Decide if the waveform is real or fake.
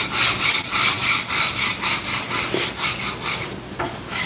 real